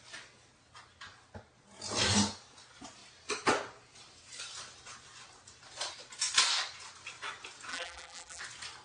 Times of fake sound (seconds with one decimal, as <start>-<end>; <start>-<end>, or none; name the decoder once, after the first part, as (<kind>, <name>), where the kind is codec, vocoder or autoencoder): 7.7-8.4 (vocoder, BigVGAN v2)